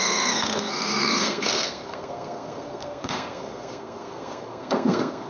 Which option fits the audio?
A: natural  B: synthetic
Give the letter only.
B